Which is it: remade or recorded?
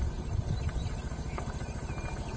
recorded